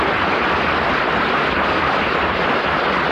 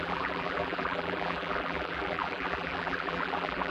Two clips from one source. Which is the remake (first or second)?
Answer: second